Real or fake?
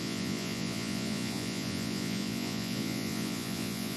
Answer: fake